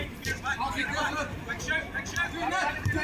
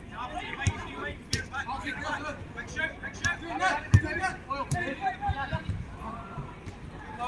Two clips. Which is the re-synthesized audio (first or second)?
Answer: first